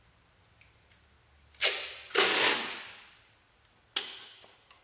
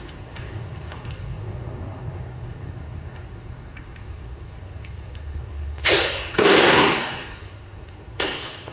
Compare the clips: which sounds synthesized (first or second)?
second